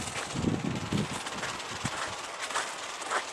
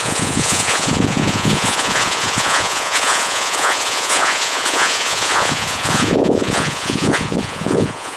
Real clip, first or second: first